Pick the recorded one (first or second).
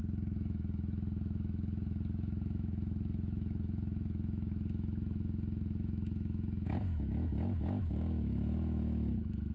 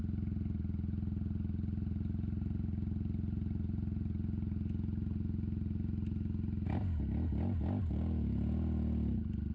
second